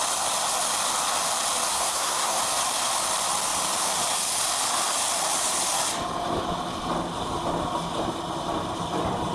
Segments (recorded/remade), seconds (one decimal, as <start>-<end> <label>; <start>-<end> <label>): 0.0-1.7 recorded; 1.7-2.4 remade; 2.4-9.3 recorded